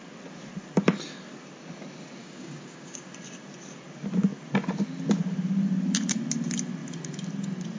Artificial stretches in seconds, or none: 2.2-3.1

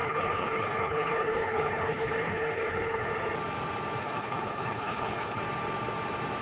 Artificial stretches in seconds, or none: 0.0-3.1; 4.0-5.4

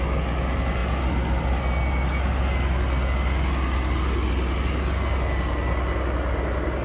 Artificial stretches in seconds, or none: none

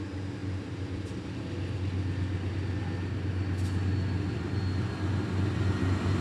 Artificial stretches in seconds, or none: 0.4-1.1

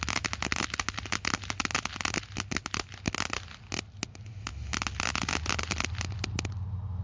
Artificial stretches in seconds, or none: none

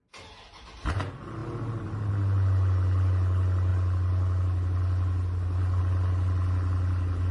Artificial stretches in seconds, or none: none